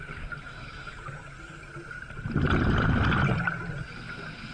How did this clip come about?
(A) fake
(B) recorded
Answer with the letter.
B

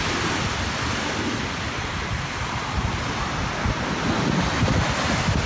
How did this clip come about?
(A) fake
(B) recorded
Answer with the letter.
B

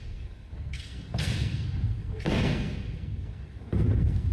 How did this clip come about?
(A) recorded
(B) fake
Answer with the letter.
B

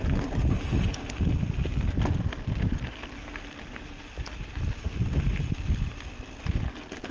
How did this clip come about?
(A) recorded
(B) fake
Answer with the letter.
A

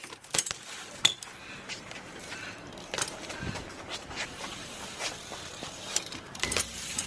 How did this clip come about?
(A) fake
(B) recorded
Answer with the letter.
A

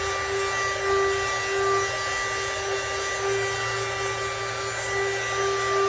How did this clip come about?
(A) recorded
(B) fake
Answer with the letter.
A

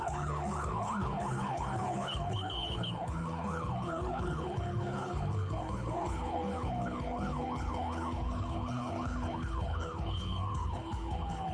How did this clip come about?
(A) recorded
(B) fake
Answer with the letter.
B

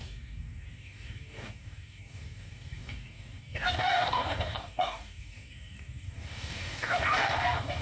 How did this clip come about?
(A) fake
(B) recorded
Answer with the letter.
A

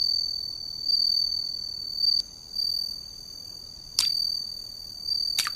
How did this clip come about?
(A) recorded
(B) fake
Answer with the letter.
A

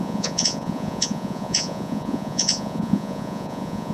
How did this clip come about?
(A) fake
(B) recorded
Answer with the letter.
A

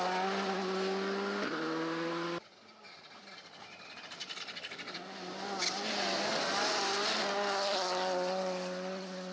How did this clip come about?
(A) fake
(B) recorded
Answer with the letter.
B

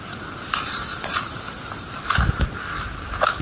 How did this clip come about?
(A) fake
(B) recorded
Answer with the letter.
B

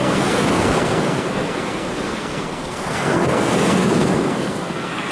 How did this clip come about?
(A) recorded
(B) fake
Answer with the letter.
B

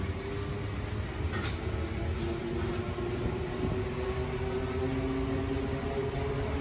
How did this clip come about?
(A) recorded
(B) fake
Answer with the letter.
A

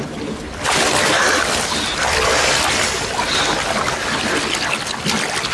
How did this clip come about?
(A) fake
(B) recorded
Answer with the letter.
B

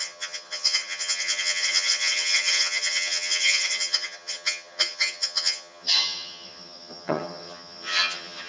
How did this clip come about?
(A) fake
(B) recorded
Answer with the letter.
A